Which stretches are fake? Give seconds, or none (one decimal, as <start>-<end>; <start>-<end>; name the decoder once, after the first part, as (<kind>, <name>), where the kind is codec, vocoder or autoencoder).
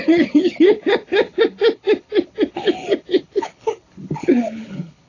0.0-5.1 (codec, HILCodec)